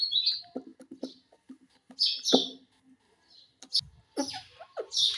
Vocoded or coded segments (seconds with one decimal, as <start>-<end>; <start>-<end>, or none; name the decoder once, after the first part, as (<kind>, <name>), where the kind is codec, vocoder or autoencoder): none